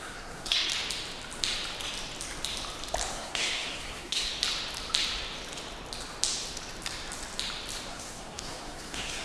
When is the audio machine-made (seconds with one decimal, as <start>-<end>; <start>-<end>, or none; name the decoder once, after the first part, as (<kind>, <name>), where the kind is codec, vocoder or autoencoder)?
0.0-0.7 (codec, SNAC); 3.1-4.3; 7.9-9.2